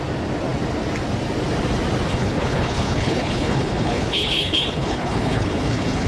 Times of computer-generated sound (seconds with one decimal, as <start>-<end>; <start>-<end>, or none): 2.1-6.1